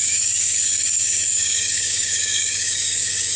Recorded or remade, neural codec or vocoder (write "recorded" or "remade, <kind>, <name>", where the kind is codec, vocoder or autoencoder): remade, codec, DAC